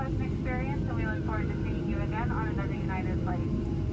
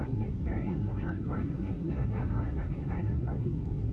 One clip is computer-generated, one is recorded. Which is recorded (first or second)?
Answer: first